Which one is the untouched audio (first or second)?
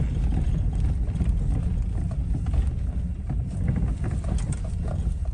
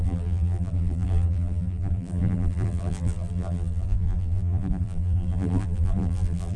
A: first